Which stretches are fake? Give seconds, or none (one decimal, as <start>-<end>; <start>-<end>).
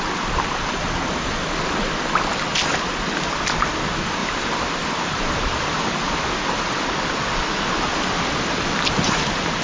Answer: 4.2-6.2